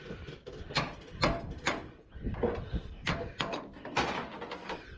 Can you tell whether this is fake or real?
real